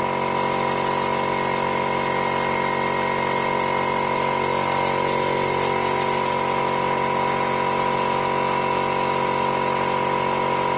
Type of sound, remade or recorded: recorded